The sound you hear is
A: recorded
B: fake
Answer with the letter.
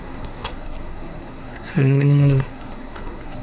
B